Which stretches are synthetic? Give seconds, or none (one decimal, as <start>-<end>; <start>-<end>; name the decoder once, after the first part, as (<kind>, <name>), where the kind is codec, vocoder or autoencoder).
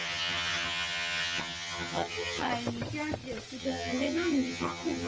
0.0-2.5 (vocoder, HiFi-GAN); 3.6-5.1